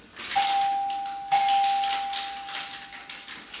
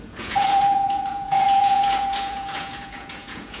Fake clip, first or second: second